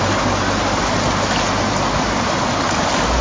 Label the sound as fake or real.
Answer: real